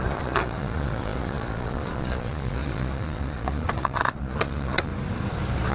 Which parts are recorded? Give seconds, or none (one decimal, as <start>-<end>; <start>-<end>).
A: 4.9-5.7